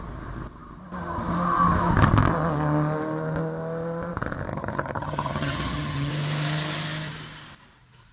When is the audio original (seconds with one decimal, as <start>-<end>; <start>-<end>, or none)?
0.0-4.5; 6.1-8.1